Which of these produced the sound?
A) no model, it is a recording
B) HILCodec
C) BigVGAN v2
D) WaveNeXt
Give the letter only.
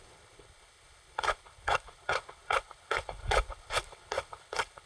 B